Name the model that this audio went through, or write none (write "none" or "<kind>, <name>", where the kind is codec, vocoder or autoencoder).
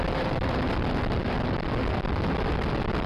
vocoder, BigVGAN v2